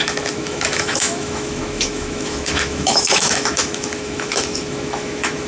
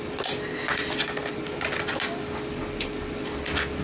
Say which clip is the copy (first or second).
first